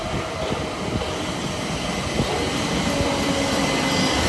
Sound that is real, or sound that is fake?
real